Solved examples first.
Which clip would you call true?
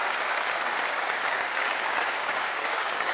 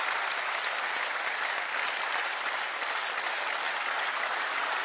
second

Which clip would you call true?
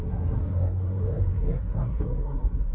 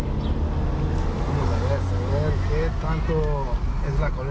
second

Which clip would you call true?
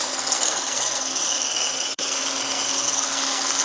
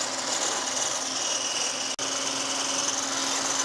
second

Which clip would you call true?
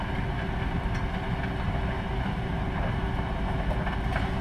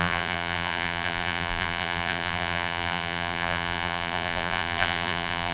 first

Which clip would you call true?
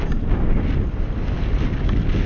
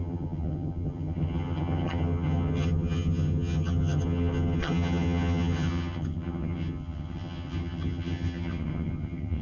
first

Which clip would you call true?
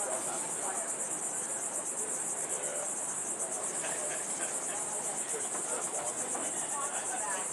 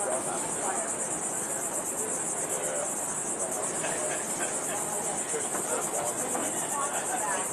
second